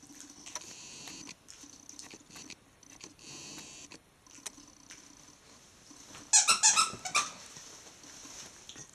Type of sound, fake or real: real